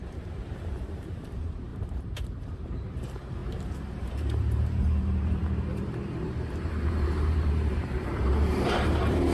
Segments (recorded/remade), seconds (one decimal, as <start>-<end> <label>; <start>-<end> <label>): 0.0-9.3 remade

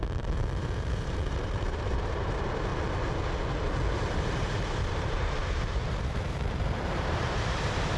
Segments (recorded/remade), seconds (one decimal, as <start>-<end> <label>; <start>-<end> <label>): 0.0-2.7 remade; 2.7-3.9 recorded; 3.9-8.0 remade